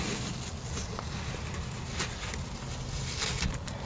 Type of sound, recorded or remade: recorded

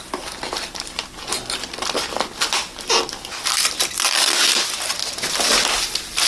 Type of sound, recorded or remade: recorded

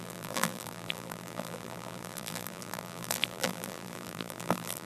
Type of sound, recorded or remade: remade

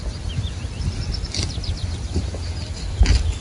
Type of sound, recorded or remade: recorded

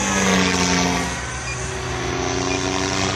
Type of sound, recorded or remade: recorded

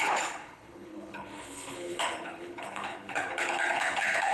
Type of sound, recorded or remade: remade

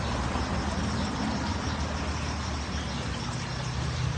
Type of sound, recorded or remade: recorded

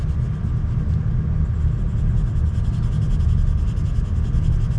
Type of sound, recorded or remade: recorded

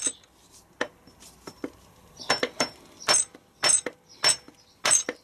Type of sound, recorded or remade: remade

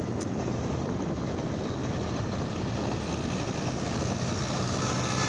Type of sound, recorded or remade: recorded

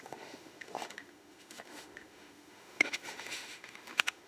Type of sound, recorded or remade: remade